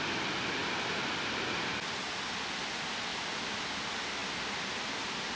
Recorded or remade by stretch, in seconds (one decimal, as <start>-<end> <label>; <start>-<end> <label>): 0.0-0.6 recorded; 0.6-1.4 remade; 1.4-4.2 recorded; 4.2-5.0 remade; 5.0-5.4 recorded